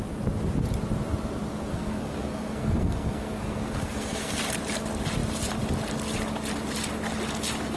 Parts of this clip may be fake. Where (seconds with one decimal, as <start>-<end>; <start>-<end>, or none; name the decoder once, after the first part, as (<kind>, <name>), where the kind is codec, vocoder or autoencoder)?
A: 1.7-4.4 (codec, SNAC)